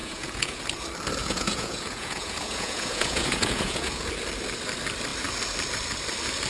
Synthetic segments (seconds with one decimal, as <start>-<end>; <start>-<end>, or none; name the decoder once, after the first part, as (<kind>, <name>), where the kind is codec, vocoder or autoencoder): 0.0-0.6 (vocoder, Vocos); 1.2-4.1